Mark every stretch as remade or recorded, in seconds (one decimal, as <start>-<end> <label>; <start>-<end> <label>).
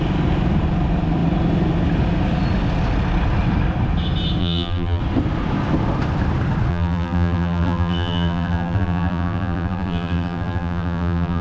0.0-4.4 recorded; 4.4-5.0 remade; 5.0-6.7 recorded; 6.7-11.4 remade